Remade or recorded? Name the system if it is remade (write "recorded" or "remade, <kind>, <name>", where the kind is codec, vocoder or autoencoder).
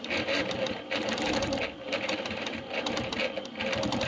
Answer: remade, vocoder, BigVGAN v2